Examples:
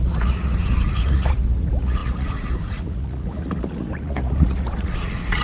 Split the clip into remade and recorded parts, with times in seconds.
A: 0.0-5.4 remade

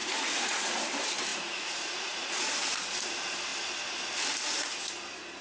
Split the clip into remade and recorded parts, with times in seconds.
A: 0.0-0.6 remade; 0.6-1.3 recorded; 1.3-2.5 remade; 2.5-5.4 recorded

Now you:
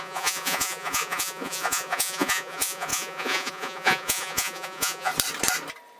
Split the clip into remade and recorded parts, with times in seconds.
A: 0.0-5.1 remade; 5.1-6.0 recorded

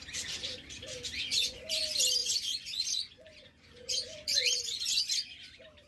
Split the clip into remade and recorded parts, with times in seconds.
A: 0.0-1.3 recorded; 1.3-1.8 remade; 1.8-2.2 recorded; 2.2-5.0 remade; 5.0-5.9 recorded

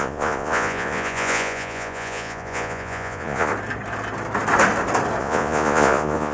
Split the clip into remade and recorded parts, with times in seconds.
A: 0.0-3.5 remade; 3.5-5.2 recorded; 5.2-6.3 remade